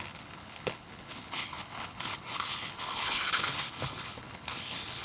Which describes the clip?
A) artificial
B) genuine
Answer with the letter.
A